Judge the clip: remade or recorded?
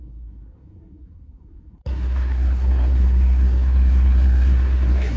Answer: remade